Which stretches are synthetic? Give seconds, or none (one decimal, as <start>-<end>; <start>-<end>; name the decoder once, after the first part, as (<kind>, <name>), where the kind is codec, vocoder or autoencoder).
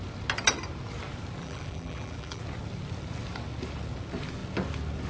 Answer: 1.4-2.4 (vocoder, BigVGAN v2)